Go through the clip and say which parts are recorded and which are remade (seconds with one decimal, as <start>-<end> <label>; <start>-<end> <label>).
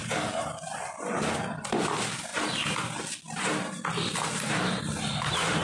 0.0-5.6 recorded